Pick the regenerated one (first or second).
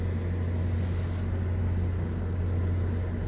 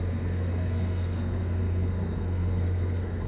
second